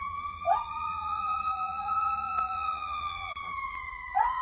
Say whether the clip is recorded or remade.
remade